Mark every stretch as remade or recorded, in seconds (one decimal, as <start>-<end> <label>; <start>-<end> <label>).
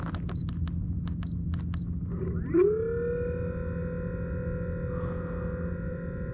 0.0-6.3 recorded